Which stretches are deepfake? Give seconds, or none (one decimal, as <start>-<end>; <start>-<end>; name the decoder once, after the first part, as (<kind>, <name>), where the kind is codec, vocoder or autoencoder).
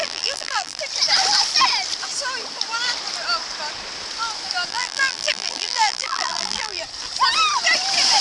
0.0-0.8 (vocoder, BigVGAN v2); 4.7-6.8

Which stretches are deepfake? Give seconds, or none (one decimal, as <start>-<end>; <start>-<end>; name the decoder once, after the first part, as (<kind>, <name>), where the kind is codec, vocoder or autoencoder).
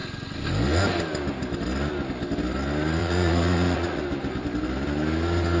3.0-4.0 (vocoder, Vocos)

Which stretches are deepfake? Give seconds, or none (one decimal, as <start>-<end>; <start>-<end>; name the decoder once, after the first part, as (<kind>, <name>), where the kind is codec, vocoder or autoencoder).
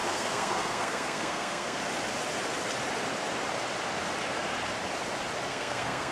0.0-1.8 (codec, SNAC); 5.5-6.1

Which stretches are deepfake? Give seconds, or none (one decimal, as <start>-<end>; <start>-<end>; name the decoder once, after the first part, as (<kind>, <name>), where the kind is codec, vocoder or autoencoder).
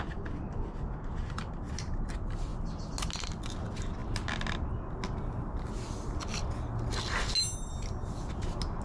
none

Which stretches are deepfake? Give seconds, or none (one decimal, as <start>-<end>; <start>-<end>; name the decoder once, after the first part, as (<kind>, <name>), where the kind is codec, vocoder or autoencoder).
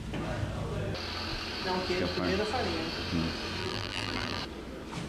3.6-4.4 (vocoder, BigVGAN v2)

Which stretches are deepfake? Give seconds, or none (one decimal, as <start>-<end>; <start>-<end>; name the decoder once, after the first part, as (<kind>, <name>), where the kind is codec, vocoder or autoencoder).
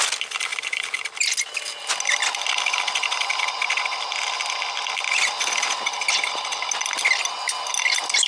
none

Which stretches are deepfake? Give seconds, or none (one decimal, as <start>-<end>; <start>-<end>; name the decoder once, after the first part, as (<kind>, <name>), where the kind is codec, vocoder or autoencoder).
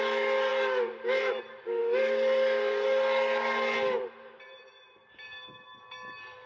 none